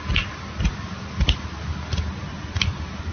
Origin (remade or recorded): recorded